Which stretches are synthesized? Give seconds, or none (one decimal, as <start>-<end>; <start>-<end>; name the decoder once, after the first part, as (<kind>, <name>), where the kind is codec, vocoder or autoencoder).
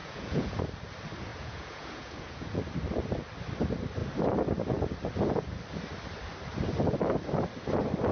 0.0-0.6 (vocoder, Vocos); 1.3-2.6